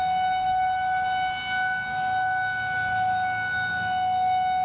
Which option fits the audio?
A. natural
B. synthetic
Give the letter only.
A